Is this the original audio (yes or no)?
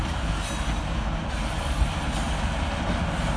yes